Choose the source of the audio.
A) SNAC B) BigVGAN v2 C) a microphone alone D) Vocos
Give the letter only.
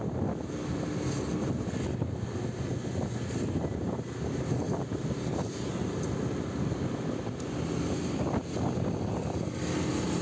C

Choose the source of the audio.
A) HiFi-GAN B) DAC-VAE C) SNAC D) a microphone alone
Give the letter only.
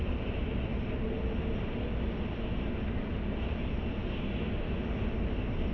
D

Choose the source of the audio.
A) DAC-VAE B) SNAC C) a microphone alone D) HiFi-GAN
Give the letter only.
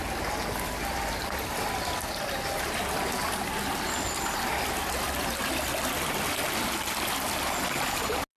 C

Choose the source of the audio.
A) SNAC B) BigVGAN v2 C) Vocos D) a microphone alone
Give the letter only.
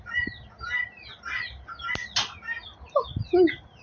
D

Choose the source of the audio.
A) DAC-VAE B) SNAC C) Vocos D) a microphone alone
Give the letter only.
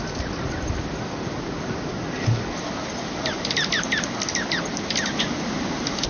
D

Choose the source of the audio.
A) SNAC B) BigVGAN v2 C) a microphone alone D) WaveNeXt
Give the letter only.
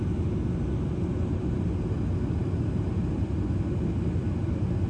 C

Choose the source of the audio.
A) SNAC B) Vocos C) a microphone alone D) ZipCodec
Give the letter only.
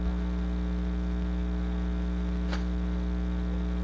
C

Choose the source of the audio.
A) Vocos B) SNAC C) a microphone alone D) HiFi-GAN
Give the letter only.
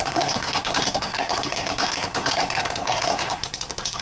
B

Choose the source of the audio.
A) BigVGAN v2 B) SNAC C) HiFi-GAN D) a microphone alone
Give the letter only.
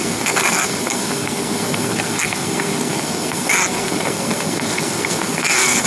B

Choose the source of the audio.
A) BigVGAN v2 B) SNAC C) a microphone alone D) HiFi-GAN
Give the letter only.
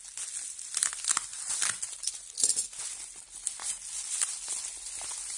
C